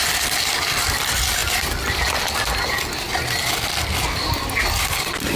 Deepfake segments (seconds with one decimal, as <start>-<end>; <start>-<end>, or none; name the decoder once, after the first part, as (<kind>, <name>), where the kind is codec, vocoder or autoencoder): none

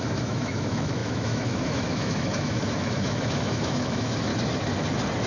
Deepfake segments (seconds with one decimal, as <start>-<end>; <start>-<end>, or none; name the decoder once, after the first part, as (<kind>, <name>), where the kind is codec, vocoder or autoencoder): 0.0-4.3 (autoencoder, DAC-VAE)

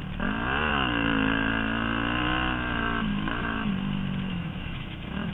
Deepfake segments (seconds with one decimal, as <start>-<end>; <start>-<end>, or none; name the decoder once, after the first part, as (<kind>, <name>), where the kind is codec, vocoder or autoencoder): 0.7-1.5 (autoencoder, DAC-VAE); 3.1-3.7; 4.3-5.3

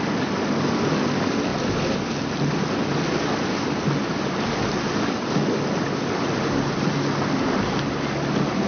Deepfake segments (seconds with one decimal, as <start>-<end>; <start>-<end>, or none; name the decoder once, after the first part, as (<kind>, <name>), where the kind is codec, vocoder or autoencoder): none